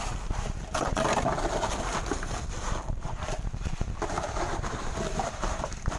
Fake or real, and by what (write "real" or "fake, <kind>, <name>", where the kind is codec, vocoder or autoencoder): fake, vocoder, BigVGAN v2